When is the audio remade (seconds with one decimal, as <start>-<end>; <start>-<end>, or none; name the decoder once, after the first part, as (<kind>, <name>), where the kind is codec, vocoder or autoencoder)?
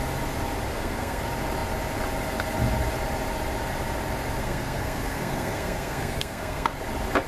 0.7-1.2 (codec, SNAC); 4.4-6.8